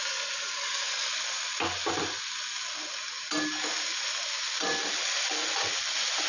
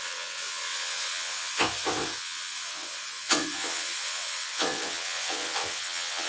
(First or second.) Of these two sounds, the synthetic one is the second